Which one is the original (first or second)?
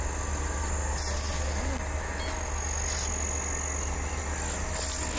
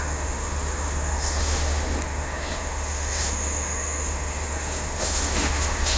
first